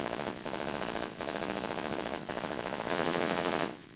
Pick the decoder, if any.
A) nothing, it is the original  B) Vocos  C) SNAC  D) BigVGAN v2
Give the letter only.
B